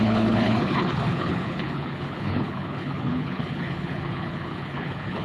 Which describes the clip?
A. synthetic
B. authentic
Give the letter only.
A